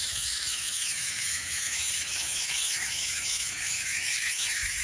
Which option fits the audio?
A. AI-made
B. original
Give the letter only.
A